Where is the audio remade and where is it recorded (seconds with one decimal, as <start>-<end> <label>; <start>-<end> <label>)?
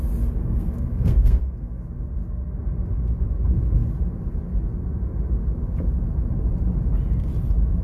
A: 0.0-0.4 recorded; 0.4-1.8 remade; 1.8-7.8 recorded